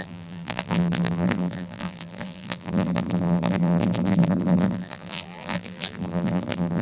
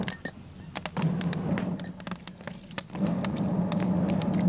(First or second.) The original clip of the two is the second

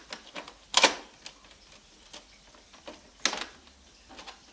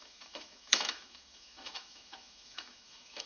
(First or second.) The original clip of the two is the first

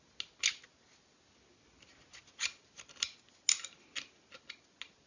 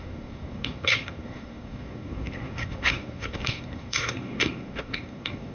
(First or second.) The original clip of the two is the first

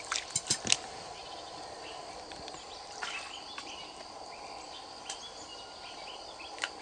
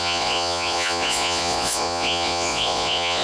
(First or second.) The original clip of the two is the first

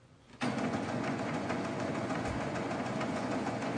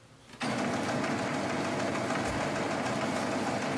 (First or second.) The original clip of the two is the second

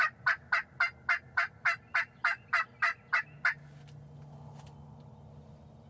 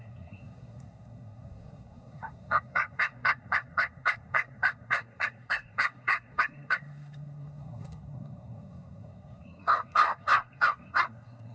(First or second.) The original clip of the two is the first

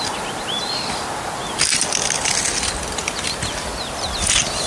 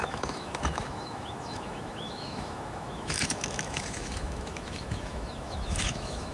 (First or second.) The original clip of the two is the first